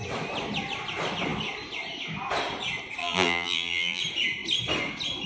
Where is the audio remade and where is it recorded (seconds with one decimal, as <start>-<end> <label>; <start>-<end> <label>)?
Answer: 0.0-3.0 recorded; 3.0-4.0 remade; 4.0-5.3 recorded